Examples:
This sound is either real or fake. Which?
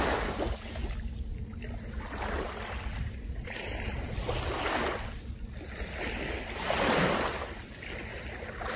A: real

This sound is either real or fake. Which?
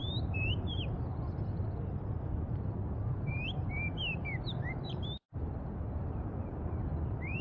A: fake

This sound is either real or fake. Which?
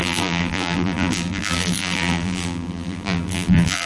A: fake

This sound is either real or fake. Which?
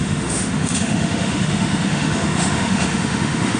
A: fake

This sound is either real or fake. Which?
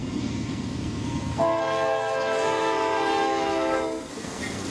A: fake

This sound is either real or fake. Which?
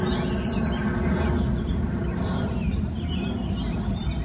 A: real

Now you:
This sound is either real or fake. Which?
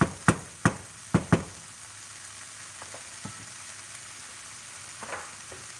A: real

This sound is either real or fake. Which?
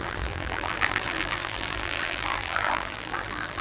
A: fake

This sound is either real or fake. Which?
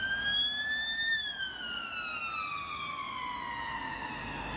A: real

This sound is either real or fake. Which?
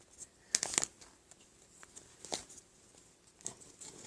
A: real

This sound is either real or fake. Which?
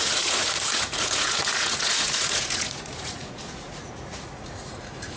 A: fake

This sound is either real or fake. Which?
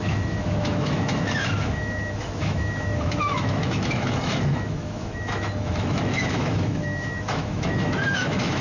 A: fake